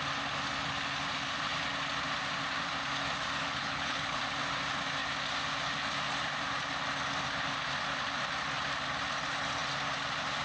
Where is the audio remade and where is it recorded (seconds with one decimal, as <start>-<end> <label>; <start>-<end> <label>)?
0.0-3.4 recorded; 3.4-4.2 remade; 4.2-10.4 recorded